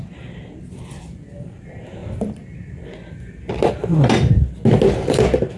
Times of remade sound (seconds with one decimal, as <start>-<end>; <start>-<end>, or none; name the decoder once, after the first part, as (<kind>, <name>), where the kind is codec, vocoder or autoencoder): none